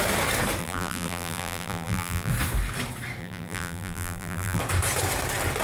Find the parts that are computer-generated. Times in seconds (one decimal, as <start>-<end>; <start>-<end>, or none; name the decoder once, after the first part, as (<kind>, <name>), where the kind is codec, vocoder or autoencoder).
0.6-2.3 (vocoder, BigVGAN v2); 3.2-4.6

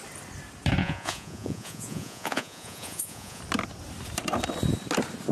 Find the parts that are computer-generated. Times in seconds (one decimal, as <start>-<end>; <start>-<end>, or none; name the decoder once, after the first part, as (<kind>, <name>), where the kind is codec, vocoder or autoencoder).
0.8-3.4 (vocoder, Vocos)

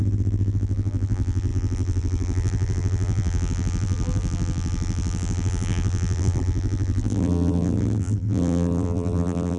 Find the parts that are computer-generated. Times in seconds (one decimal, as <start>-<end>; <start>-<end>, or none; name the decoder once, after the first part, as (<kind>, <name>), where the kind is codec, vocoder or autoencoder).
0.0-9.6 (vocoder, BigVGAN v2)

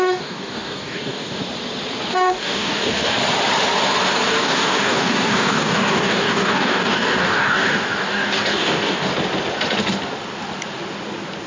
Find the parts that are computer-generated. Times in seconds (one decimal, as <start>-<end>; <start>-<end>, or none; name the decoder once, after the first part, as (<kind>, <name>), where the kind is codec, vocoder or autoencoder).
0.0-1.4 (codec, DAC); 2.1-3.2; 4.3-9.1

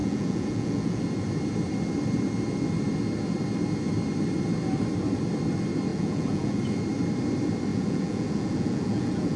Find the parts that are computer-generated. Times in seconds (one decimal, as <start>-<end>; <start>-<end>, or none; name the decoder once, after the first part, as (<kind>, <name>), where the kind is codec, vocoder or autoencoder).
0.0-1.0 (vocoder, Vocos); 5.9-6.6; 7.7-9.4

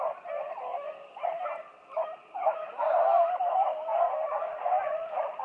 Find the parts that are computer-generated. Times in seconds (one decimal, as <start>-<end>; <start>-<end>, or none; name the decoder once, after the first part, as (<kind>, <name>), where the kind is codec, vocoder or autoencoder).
none

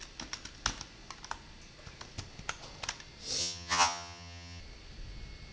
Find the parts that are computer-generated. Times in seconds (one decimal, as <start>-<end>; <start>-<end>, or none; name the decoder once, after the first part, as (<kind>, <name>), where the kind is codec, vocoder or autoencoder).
3.4-4.6 (vocoder, HiFi-GAN)